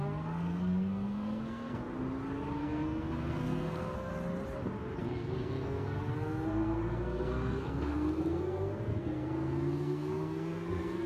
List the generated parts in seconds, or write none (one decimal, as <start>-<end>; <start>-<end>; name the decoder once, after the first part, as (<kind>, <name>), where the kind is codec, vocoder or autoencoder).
0.0-1.8 (codec, SNAC); 2.6-4.1; 5.0-11.1